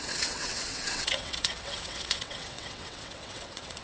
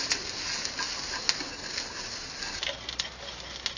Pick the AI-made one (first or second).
first